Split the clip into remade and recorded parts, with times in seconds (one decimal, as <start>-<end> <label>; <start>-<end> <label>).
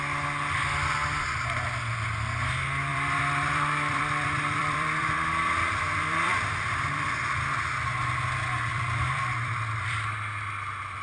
0.0-2.9 recorded; 2.9-7.2 remade; 7.2-8.7 recorded; 8.7-10.1 remade; 10.1-11.0 recorded